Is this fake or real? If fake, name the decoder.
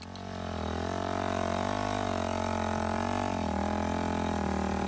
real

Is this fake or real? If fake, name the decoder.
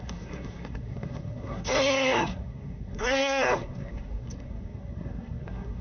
fake, codec, SNAC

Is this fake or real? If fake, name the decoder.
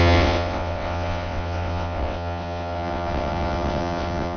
fake, vocoder, WaveNeXt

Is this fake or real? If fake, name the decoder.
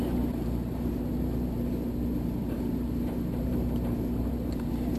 fake, vocoder, BigVGAN v2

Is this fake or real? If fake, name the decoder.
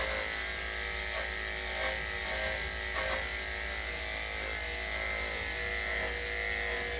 real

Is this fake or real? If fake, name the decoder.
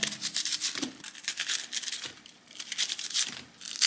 fake, vocoder, BigVGAN v2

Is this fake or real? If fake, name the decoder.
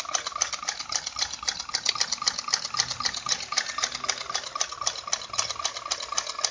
real